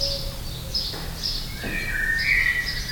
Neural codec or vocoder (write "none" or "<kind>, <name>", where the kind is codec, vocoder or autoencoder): none